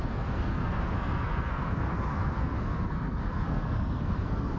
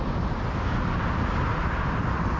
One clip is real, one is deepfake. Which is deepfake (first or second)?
first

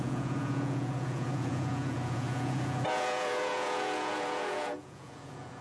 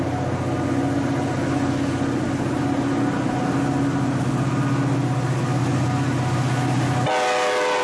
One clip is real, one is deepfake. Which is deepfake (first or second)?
first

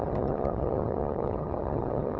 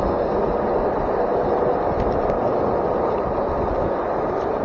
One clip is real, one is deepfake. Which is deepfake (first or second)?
first